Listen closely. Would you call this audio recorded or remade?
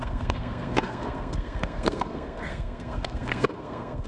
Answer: remade